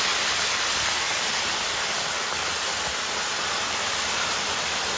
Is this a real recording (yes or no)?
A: yes